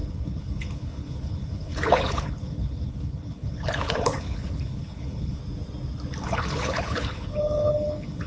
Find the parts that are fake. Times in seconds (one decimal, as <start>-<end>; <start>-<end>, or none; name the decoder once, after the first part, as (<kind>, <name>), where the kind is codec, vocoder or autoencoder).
0.0-5.4 (codec, HILCodec); 6.2-8.3